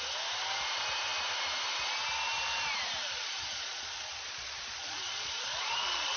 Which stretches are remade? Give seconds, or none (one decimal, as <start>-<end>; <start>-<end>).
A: 3.0-6.2